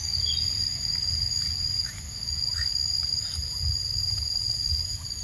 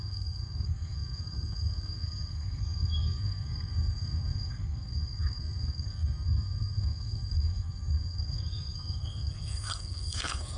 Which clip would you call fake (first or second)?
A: second